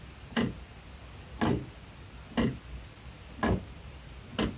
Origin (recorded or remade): recorded